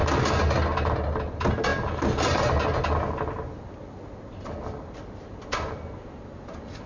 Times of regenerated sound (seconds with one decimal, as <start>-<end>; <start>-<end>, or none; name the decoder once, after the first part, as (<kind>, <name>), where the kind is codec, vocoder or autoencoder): none